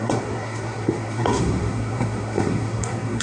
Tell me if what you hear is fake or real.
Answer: fake